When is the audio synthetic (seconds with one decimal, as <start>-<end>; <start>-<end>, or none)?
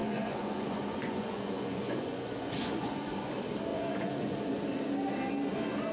0.0-3.3; 3.7-4.6